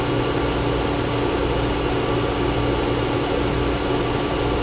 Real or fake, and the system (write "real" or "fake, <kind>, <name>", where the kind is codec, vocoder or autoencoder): real